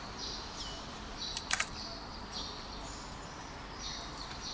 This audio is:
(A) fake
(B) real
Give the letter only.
B